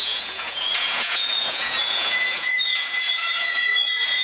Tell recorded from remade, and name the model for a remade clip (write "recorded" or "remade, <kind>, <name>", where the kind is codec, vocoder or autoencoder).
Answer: remade, vocoder, Vocos